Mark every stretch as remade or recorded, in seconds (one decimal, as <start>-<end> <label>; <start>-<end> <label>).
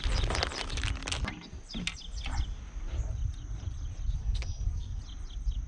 0.0-4.2 recorded; 4.2-5.0 remade; 5.0-5.7 recorded